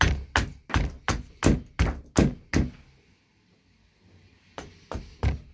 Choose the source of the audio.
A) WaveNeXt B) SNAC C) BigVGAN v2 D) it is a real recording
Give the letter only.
D